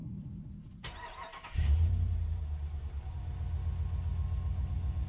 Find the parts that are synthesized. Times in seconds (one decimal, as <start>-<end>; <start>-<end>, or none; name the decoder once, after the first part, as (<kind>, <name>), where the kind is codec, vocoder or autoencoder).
0.0-3.1 (vocoder, BigVGAN v2)

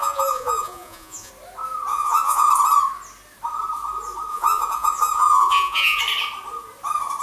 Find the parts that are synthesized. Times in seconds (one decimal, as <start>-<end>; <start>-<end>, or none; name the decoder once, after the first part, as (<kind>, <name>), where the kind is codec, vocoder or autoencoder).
0.0-1.3 (vocoder, Vocos); 1.9-2.5; 4.3-6.0

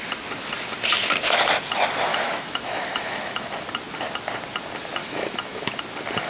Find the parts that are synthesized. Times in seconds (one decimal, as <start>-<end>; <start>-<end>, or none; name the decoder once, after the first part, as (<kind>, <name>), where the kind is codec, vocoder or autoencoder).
2.1-3.4 (autoencoder, DAC-VAE); 5.0-5.8

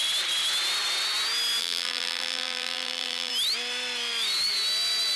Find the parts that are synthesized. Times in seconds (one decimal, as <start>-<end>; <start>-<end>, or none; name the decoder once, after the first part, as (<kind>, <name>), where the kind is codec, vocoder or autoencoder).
1.6-3.3 (vocoder, BigVGAN v2)

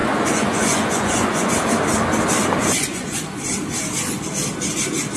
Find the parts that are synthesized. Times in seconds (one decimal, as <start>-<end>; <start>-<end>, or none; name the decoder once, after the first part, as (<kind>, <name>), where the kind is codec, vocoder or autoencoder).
0.0-1.5 (vocoder, Vocos); 2.6-3.2